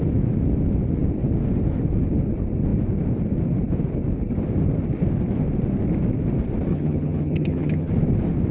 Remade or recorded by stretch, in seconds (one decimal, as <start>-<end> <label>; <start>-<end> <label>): 0.0-6.7 recorded; 6.7-7.9 remade; 7.9-8.5 recorded